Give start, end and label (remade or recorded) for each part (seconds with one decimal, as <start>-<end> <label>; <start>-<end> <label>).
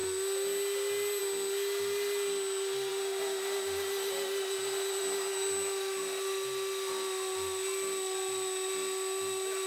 0.0-9.7 recorded